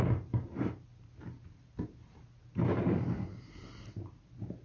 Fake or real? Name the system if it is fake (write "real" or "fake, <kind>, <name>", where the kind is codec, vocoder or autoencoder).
real